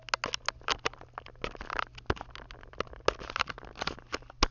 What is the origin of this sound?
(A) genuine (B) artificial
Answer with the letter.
A